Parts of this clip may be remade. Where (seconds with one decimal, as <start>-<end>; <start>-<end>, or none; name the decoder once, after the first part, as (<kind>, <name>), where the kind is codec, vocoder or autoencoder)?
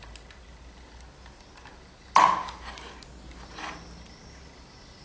none